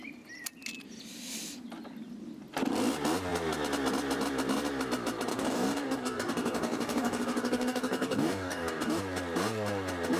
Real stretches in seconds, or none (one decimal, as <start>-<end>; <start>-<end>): 0.0-5.3; 9.0-10.2